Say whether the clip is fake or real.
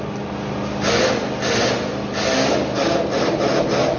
real